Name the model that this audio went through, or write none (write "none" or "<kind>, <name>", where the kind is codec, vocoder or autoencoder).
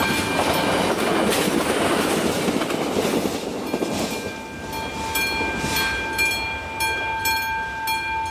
none